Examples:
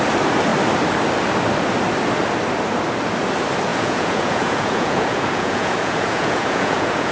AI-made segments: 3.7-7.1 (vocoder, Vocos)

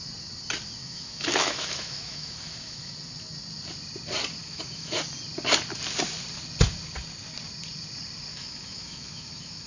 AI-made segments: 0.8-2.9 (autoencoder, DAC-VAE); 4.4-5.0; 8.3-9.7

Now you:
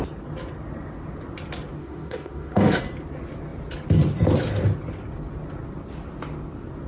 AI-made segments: 1.8-2.8 (autoencoder, DAC-VAE)

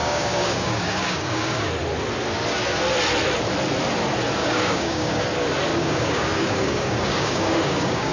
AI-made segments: 0.0-1.7 (codec, DAC); 4.4-5.2; 5.7-8.1

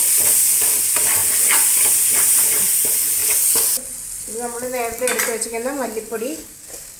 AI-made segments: 6.1-6.6 (codec, DAC)